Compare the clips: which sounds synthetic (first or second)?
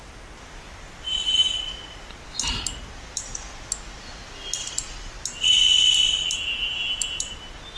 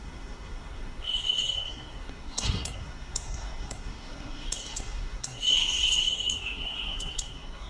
second